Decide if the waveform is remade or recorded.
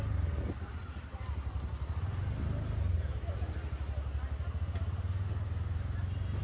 recorded